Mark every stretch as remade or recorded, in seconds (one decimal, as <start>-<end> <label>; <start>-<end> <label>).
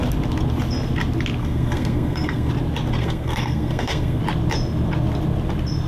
0.0-1.4 recorded; 1.4-2.5 remade; 2.5-3.0 recorded; 3.0-4.2 remade; 4.2-5.9 recorded